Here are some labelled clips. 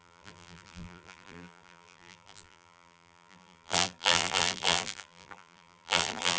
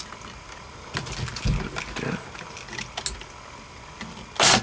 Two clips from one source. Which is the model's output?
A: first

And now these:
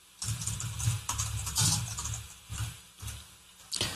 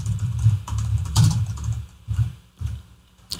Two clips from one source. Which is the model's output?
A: second